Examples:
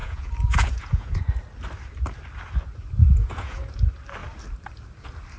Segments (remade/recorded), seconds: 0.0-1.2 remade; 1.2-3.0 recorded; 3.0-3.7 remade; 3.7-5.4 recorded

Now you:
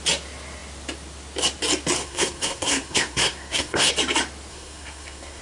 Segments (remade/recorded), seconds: 0.0-2.0 recorded; 2.0-3.9 remade; 3.9-4.5 recorded; 4.5-5.4 remade